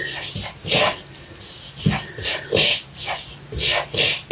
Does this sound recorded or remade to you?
recorded